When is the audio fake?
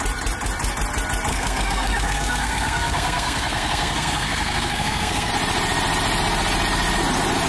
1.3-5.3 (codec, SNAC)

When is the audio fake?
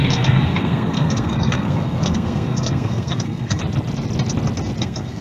0.0-3.6 (codec, SNAC); 4.8-5.2